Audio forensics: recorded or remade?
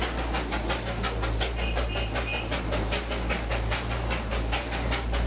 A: recorded